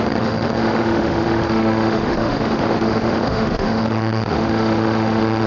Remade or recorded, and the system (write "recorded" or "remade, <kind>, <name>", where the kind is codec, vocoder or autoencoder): remade, autoencoder, DAC-VAE